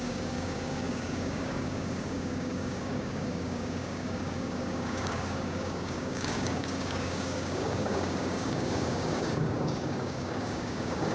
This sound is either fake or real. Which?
fake